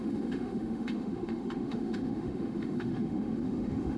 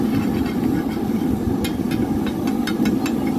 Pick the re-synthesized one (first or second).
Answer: first